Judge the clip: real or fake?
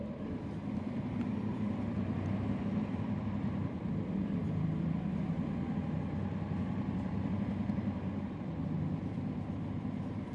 fake